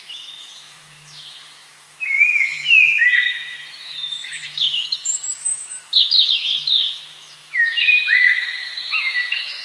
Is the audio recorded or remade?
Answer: remade